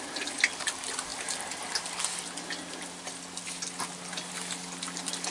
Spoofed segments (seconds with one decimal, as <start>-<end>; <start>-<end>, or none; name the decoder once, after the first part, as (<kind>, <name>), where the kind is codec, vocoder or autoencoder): none

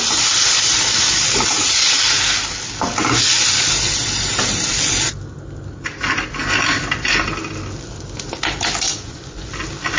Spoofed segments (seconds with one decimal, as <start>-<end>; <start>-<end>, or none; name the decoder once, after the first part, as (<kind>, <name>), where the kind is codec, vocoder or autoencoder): 8.9-9.5 (vocoder, Vocos)

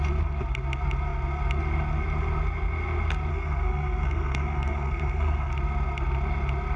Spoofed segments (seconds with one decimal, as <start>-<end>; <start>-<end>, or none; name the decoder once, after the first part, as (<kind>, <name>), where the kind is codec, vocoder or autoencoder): 3.3-5.5 (codec, SNAC)

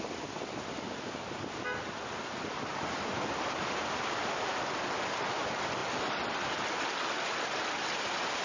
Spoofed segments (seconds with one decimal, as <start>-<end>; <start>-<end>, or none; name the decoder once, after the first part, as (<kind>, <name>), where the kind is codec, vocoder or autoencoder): none

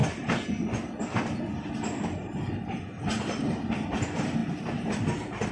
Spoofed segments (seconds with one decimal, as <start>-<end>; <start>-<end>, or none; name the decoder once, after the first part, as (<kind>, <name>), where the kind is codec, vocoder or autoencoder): none

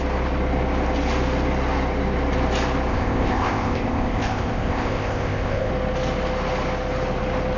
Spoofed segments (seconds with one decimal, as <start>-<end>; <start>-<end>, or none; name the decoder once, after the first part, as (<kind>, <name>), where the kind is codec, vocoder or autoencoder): 2.9-5.7 (codec, ZipCodec)

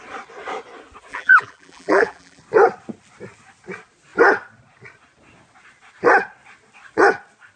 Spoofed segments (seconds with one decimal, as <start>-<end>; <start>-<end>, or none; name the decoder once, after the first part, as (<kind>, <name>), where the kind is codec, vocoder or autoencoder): 1.1-2.4 (vocoder, BigVGAN v2)